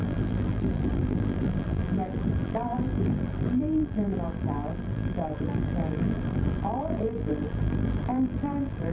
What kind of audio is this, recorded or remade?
remade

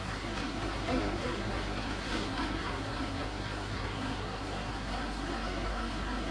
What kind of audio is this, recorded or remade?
remade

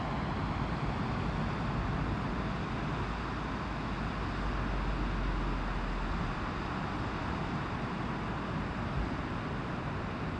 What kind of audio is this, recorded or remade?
recorded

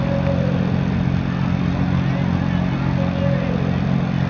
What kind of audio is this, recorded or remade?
recorded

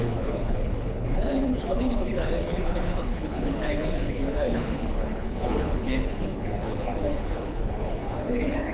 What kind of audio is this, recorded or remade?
remade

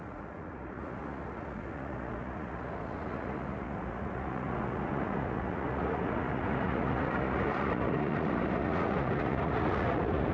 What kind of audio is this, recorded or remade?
remade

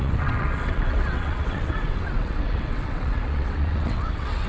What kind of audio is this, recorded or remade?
remade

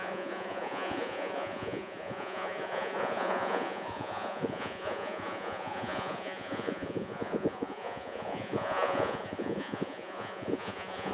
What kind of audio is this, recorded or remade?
remade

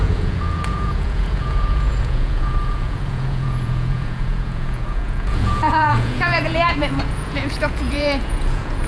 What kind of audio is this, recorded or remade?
remade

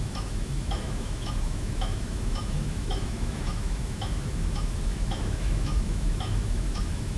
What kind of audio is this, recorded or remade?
remade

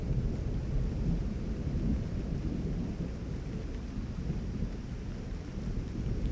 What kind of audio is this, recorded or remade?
recorded